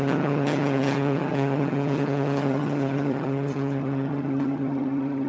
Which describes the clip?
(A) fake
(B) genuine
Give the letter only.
A